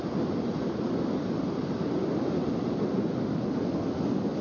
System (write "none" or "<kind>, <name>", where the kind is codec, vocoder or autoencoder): none